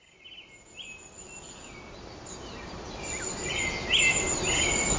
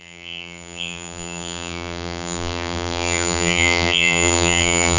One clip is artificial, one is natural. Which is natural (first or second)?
first